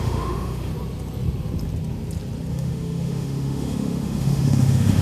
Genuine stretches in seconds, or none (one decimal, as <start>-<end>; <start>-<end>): 0.7-2.5